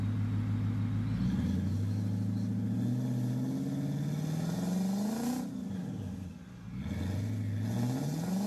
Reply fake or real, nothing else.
real